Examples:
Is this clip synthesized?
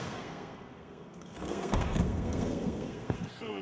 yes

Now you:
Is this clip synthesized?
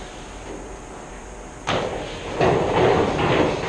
no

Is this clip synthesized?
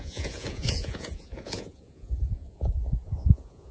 yes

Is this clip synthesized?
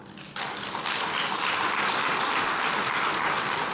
no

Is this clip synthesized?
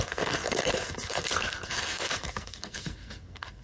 yes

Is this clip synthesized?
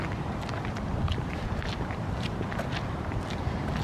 no